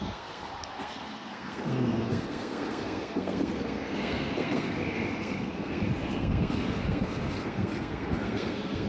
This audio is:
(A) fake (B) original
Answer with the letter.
A